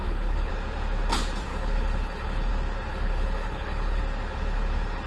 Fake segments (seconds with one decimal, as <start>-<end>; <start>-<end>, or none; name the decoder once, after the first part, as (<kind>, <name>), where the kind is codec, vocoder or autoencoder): 0.0-0.5 (codec, HILCodec); 1.5-2.5; 2.9-4.0